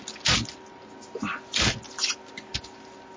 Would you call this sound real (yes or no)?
yes